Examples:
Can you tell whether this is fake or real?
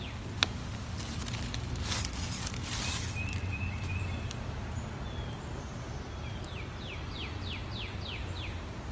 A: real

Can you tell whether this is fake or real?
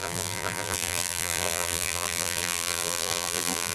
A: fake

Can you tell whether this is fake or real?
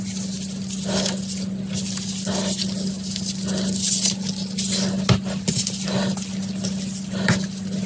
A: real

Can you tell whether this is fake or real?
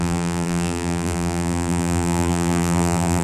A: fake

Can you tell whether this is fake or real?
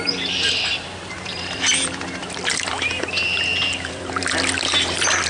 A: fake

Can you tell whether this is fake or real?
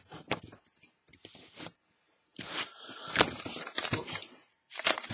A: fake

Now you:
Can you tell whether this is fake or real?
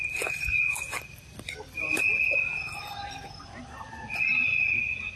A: real